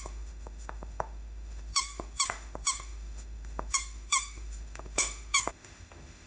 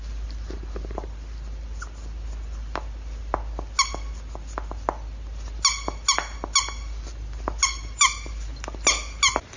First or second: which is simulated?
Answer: first